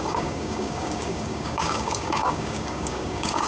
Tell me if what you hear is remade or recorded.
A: remade